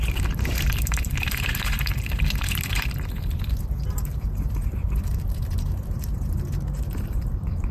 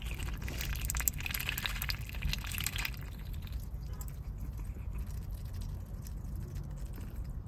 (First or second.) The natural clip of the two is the second